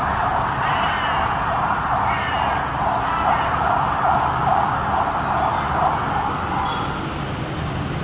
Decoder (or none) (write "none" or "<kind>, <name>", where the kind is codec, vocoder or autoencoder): none